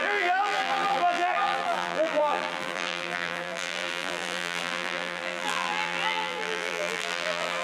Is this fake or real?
fake